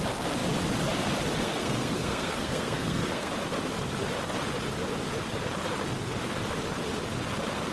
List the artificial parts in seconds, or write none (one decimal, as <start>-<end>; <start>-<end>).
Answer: 1.4-3.3